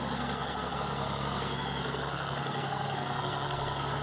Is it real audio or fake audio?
fake